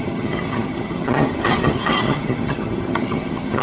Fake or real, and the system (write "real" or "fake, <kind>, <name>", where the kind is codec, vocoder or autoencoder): fake, vocoder, HiFi-GAN